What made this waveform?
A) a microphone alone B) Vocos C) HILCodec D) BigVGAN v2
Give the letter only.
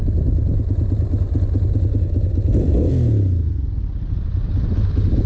A